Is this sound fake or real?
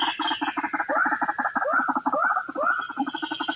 real